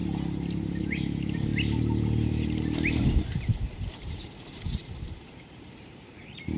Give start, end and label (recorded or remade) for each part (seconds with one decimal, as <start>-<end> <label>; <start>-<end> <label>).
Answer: 0.0-0.8 recorded; 0.8-1.5 remade; 1.5-2.3 recorded; 2.3-6.6 remade